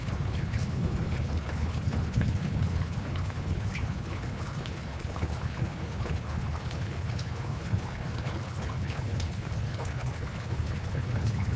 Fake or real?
fake